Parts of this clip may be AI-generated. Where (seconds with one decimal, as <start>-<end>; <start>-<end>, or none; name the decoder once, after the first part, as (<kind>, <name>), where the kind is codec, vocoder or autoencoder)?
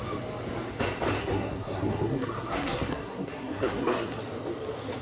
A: 1.2-4.2 (codec, SNAC)